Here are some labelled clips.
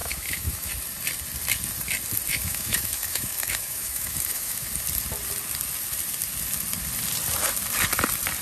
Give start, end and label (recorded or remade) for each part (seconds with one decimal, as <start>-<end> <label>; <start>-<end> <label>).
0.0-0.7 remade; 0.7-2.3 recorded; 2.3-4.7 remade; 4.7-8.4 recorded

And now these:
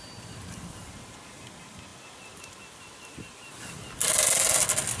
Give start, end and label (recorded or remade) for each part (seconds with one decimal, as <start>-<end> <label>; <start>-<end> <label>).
0.0-5.0 recorded

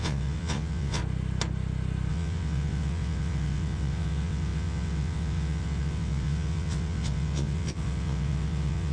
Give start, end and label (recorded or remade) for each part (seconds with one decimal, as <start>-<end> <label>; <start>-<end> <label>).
0.0-1.0 remade; 1.0-2.1 recorded; 2.1-8.9 remade

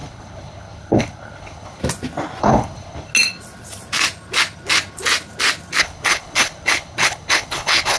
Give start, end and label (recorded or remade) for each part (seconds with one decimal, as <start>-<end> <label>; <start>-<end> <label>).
0.0-1.8 remade; 1.8-2.4 recorded; 2.4-3.1 remade; 3.1-5.8 recorded; 5.8-8.0 remade

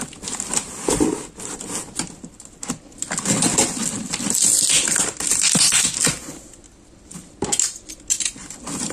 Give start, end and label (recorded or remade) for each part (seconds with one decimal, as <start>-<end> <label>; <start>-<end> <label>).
0.0-8.9 recorded

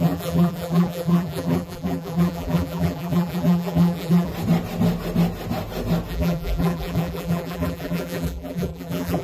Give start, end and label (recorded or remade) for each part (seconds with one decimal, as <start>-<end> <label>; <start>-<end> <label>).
0.0-4.3 remade; 4.3-6.1 recorded; 6.1-9.2 remade